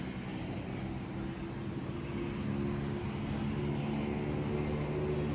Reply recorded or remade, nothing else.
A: recorded